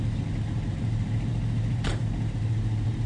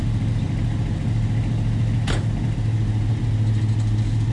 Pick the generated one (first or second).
first